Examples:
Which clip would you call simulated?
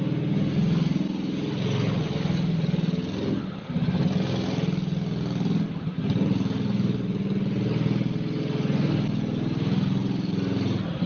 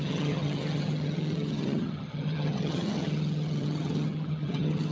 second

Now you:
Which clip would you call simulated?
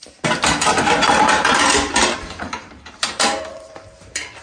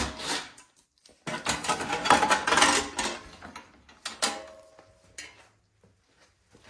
first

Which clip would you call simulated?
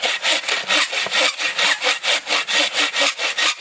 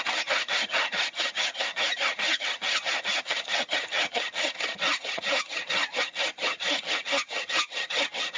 second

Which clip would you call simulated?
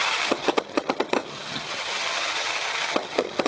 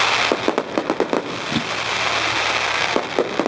first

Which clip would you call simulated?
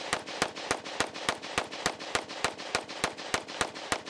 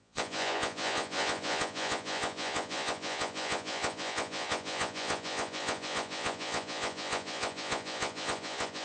second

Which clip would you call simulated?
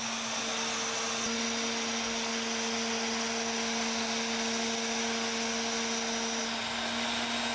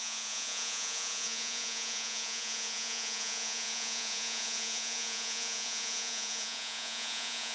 second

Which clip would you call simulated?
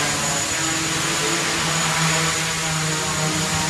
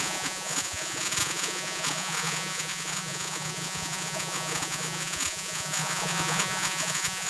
second